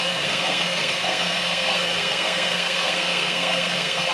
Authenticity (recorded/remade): remade